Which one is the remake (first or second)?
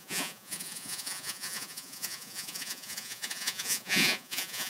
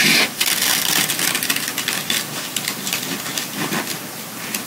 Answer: first